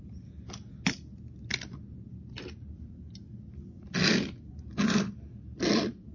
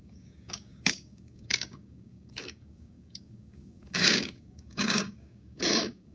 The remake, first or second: second